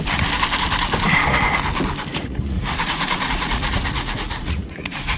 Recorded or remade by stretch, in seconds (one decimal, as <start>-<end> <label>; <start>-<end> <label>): 0.0-2.1 recorded; 2.1-5.2 remade